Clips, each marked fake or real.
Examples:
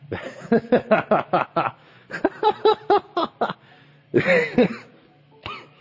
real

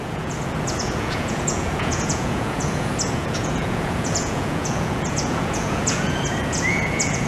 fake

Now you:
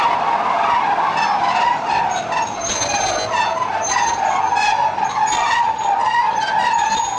real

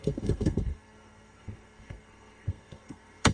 fake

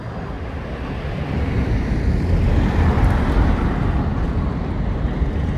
real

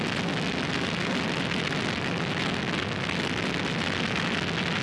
real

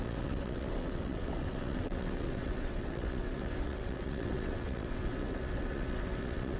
fake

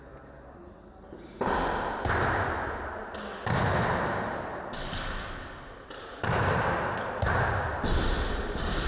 real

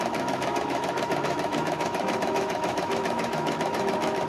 fake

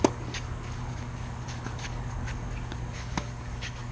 fake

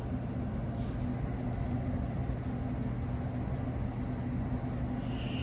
real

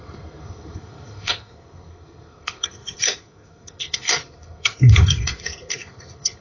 fake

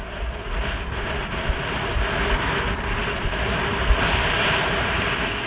real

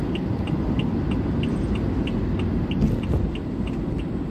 real